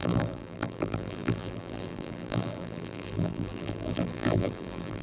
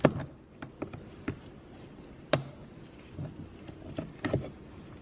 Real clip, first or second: second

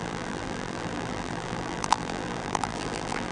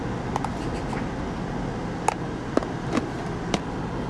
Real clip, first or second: second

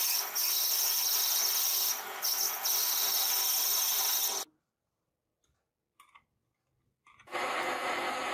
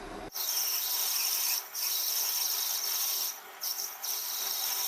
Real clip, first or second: first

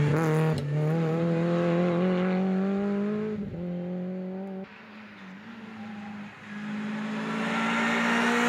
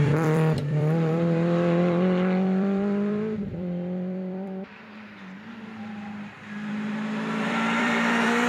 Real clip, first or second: first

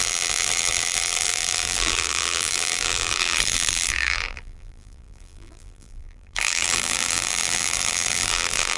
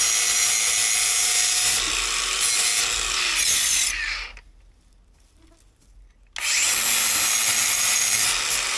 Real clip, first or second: second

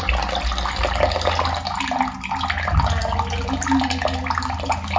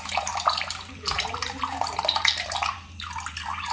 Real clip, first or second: first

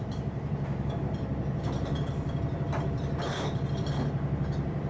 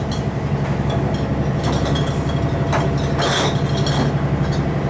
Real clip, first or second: second